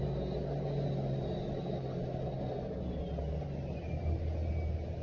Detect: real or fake real